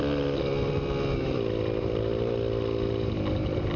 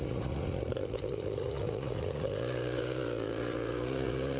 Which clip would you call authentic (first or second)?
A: first